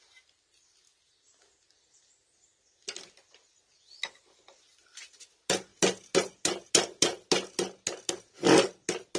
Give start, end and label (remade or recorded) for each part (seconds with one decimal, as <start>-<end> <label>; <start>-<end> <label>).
0.0-9.2 recorded